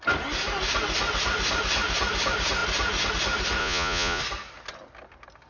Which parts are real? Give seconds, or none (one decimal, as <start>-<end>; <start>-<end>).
0.0-3.6; 4.2-5.5

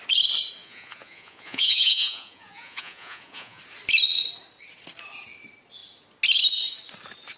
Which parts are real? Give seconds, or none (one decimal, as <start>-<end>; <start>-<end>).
0.0-0.6; 3.6-7.4

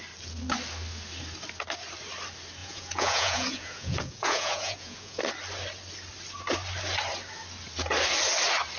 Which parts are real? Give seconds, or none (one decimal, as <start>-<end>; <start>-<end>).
0.0-2.6; 5.2-8.8

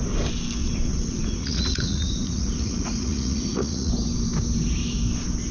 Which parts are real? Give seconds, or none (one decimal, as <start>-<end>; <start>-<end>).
0.0-0.6; 3.9-5.5

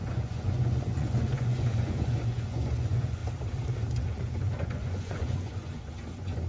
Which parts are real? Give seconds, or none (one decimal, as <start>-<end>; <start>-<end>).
3.2-4.0